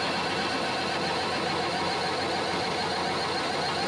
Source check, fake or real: real